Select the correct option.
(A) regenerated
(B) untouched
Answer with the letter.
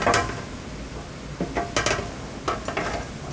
B